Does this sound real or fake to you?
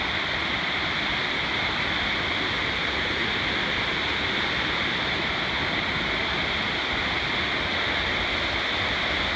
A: real